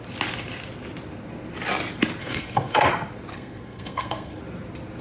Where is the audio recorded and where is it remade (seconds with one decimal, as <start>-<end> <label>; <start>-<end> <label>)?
0.0-2.2 recorded; 2.2-2.9 remade; 2.9-3.3 recorded; 3.3-4.4 remade; 4.4-5.0 recorded